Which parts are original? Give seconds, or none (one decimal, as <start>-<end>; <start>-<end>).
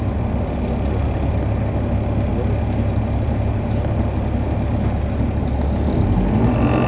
0.0-6.9